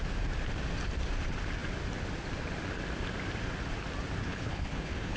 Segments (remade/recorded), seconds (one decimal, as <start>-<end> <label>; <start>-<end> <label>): 0.0-4.2 recorded; 4.2-5.2 remade